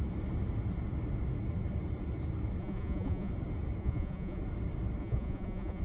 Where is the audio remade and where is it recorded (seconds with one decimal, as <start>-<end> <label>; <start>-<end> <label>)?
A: 0.0-2.6 recorded; 2.6-3.3 remade; 3.3-3.8 recorded; 3.8-4.4 remade; 4.4-5.0 recorded; 5.0-5.8 remade